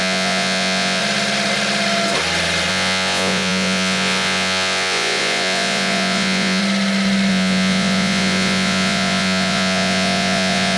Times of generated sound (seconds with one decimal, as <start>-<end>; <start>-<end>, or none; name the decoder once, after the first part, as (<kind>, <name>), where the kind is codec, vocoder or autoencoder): 0.0-1.0 (vocoder, Vocos); 2.7-6.6; 7.3-10.8